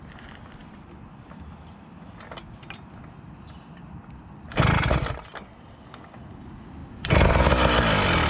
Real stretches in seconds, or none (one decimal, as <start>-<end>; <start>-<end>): 0.0-8.3